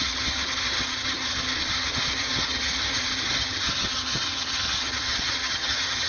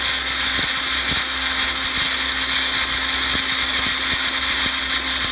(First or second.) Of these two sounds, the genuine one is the second